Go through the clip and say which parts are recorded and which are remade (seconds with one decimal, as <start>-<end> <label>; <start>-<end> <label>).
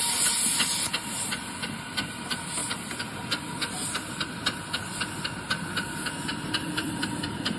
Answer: 0.0-6.3 recorded; 6.3-6.9 remade; 6.9-7.6 recorded